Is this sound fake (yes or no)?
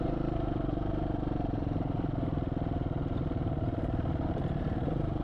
yes